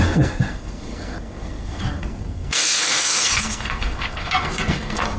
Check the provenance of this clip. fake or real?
fake